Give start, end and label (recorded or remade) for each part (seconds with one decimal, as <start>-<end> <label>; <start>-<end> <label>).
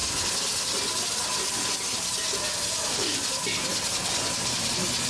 0.0-5.1 recorded